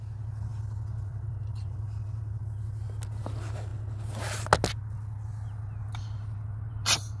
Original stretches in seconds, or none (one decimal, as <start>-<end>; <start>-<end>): 0.0-0.5; 2.4-7.2